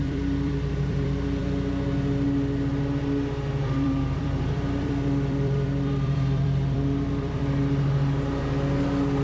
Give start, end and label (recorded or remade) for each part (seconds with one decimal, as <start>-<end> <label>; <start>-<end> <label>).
0.0-1.4 remade; 1.4-3.6 recorded; 3.6-7.4 remade; 7.4-9.2 recorded